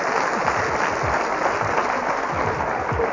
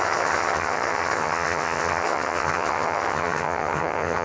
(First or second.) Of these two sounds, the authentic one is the first